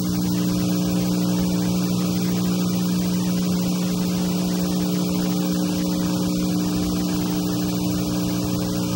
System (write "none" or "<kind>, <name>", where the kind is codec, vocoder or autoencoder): none